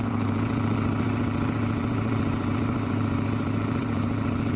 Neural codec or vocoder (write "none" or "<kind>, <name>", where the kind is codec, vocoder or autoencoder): vocoder, BigVGAN v2